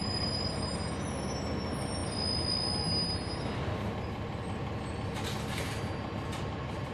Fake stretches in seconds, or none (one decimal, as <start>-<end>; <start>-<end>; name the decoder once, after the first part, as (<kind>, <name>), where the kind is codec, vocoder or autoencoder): none